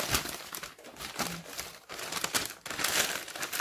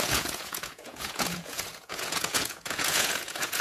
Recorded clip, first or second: first